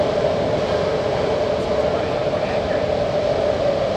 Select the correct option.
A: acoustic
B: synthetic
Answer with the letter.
A